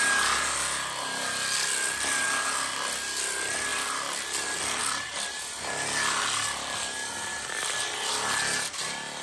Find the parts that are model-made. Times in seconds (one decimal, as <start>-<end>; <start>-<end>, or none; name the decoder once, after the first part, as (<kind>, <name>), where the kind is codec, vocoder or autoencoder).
none